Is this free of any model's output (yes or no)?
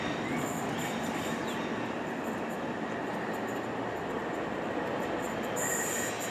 yes